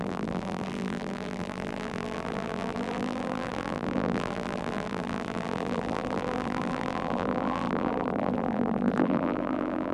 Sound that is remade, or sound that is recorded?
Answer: remade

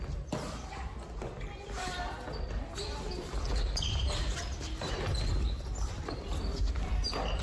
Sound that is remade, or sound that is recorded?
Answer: recorded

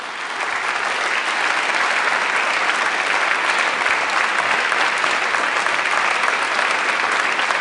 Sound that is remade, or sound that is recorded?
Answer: recorded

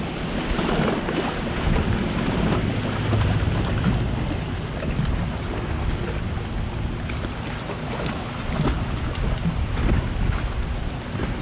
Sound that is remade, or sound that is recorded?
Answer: recorded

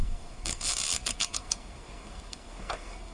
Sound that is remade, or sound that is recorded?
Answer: remade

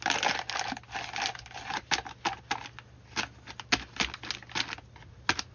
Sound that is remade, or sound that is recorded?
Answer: recorded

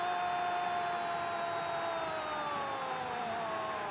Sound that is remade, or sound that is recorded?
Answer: recorded